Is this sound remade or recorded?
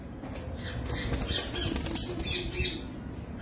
recorded